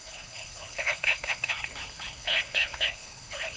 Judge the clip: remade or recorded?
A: remade